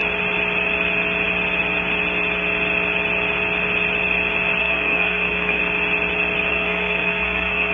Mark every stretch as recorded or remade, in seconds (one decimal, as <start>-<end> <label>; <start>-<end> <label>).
0.0-4.6 recorded; 4.6-5.6 remade; 5.6-6.5 recorded; 6.5-7.7 remade